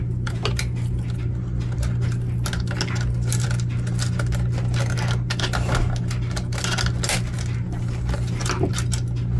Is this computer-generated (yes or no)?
no